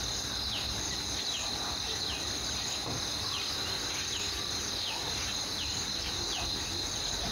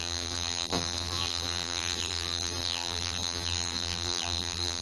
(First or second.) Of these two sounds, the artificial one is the second